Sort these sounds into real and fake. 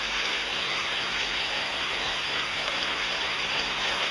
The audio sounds fake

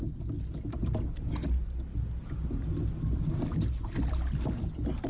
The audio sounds real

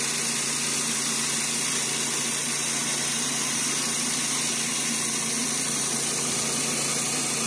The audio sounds real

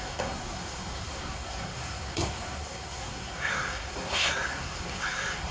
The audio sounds fake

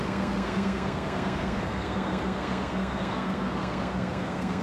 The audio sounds fake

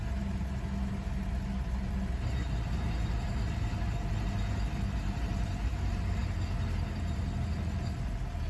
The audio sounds real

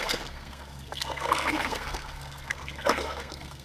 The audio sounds fake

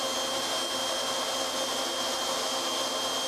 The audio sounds real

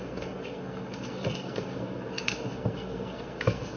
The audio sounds fake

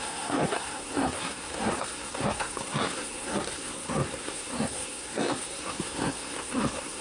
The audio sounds fake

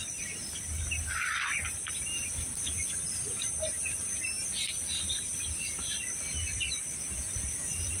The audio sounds real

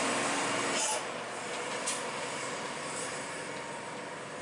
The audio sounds real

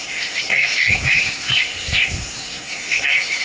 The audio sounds fake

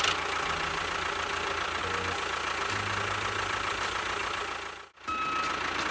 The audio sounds real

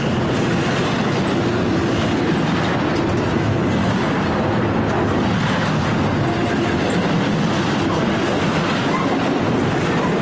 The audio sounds real